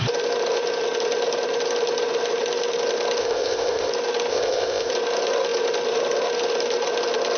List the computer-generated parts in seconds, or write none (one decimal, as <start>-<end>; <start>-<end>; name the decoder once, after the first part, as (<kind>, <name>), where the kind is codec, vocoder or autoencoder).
3.2-3.9 (codec, ZipCodec); 4.3-4.9